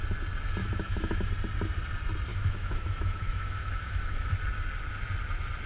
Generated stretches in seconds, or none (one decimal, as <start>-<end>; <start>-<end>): 0.6-1.3; 2.3-4.4